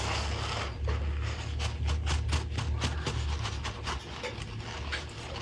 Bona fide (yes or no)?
yes